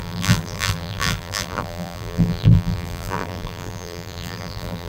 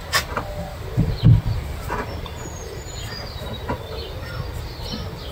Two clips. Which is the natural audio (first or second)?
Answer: second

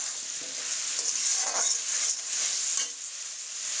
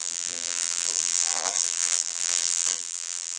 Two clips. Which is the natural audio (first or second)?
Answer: first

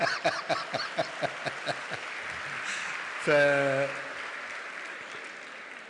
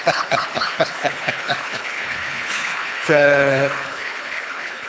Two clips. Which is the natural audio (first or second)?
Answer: first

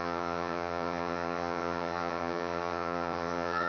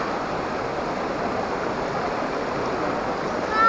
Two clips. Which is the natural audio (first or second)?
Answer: second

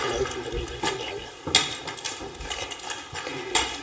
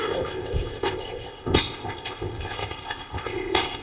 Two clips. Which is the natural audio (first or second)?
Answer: first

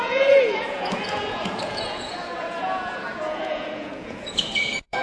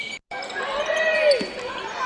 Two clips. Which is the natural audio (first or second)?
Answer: second